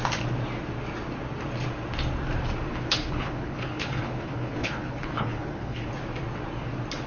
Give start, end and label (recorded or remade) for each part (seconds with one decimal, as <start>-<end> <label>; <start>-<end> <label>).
0.0-2.7 recorded; 2.7-5.9 remade; 5.9-7.1 recorded